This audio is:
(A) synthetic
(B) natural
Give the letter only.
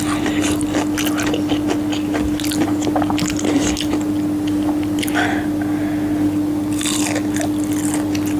B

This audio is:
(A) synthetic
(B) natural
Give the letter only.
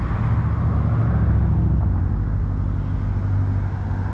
B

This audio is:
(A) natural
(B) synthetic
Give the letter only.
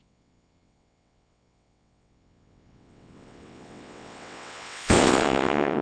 B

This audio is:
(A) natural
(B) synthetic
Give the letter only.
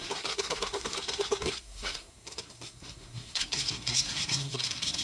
B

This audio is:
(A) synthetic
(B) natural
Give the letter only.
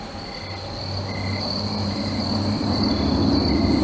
B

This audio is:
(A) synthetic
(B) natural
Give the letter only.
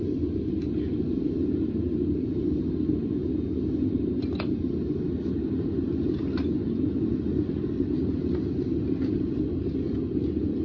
B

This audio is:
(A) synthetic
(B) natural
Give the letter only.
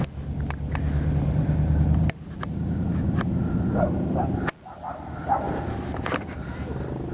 B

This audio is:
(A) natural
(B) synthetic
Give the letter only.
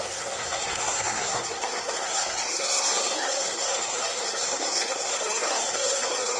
B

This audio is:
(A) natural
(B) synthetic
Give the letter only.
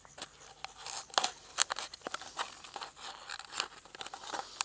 A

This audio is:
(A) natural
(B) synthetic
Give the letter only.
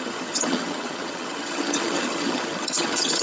B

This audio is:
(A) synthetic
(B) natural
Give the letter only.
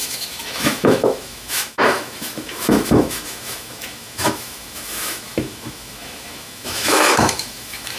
A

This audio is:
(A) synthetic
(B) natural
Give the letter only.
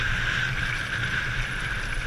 B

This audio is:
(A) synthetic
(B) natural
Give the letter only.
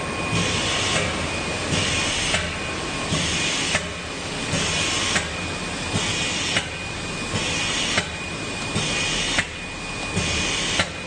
B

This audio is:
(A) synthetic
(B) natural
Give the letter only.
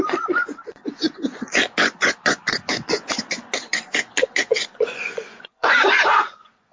A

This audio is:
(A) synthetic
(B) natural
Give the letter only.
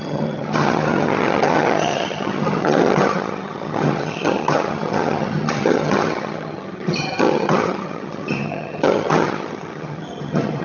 A